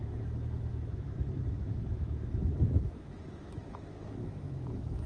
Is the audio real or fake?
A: fake